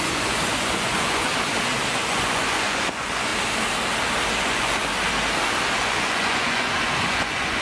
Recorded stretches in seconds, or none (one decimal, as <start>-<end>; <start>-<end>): 1.3-1.9; 3.3-4.4; 4.9-5.8